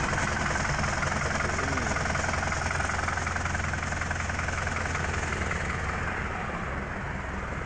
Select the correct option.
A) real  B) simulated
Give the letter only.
A